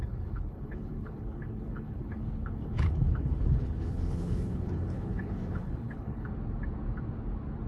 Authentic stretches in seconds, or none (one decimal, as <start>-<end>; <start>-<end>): 6.3-7.7